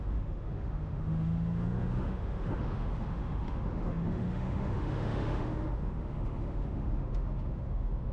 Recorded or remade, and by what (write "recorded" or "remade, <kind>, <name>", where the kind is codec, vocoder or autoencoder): remade, autoencoder, DAC-VAE